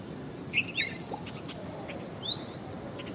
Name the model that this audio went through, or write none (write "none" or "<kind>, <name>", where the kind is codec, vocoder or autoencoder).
none